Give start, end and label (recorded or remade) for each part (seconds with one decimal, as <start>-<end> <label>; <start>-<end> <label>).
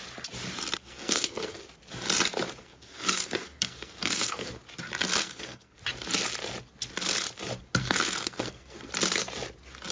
0.0-0.8 recorded; 0.8-1.6 remade; 1.6-2.6 recorded; 2.6-4.6 remade; 4.6-5.2 recorded; 5.2-5.8 remade; 5.8-7.8 recorded; 7.8-8.9 remade; 8.9-9.9 recorded